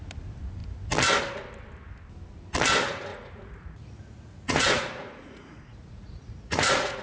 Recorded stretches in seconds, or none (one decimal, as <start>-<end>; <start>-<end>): 0.0-3.1